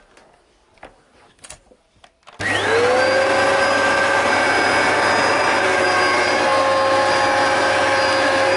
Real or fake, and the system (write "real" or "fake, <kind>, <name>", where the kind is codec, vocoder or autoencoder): real